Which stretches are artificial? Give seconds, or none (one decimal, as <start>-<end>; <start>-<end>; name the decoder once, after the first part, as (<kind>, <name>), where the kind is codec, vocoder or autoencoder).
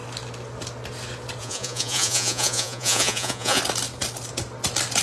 1.4-3.6 (vocoder, Vocos)